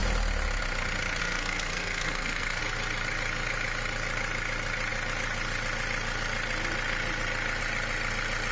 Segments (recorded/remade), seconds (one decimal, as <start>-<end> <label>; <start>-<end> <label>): 0.0-1.2 recorded; 1.2-2.6 remade; 2.6-8.5 recorded